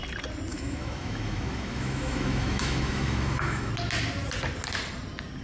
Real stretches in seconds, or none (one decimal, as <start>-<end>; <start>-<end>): 0.0-0.5; 3.7-5.4